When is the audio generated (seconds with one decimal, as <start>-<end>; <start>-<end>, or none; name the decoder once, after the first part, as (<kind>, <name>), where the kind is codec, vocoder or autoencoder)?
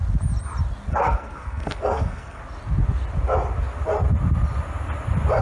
0.9-2.4 (codec, SNAC)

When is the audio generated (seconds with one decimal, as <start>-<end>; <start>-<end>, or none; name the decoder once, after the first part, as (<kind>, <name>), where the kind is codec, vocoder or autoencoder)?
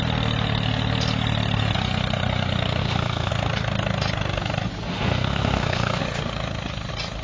2.8-3.3 (codec, SNAC); 4.9-6.0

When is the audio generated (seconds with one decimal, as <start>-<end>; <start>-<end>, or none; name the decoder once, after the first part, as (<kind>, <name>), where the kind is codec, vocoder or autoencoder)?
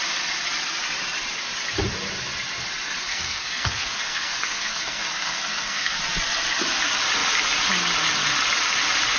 3.1-6.0 (codec, SNAC)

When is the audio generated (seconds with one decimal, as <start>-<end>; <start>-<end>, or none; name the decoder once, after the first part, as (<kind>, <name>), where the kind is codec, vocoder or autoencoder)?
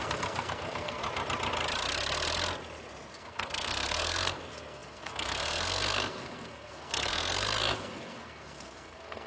0.0-1.0 (codec, SNAC); 3.1-9.3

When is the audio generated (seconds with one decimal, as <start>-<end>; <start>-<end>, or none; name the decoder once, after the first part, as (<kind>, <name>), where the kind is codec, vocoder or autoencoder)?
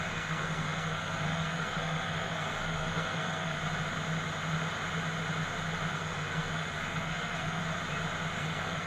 0.0-3.6 (codec, SNAC); 5.9-7.6; 8.3-8.9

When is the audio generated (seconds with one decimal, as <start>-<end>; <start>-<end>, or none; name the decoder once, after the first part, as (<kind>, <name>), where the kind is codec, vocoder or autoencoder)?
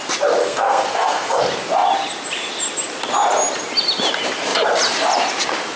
0.4-1.4 (codec, SNAC)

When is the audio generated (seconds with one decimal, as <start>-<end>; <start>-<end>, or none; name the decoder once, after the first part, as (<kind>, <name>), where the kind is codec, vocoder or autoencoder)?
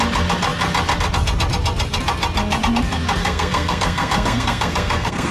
3.2-5.3 (codec, SNAC)